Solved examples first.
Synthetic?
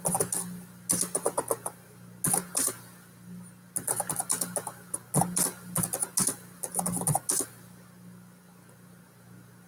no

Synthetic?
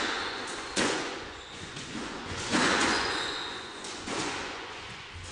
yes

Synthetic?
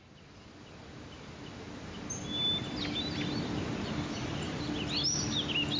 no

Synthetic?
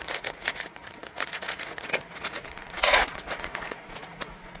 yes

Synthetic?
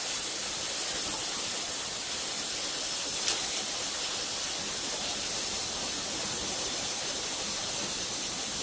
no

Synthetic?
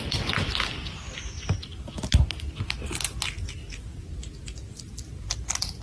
no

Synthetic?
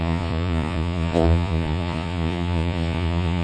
yes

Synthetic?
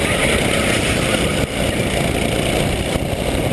no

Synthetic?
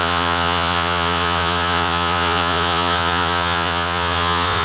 yes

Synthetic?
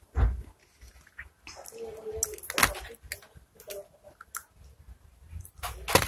no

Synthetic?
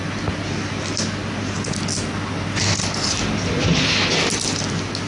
no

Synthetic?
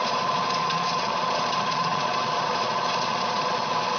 yes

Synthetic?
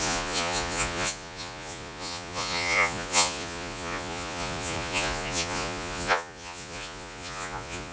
yes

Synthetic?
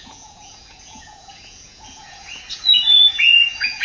yes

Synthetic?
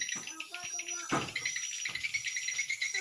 no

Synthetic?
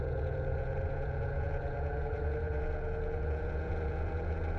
yes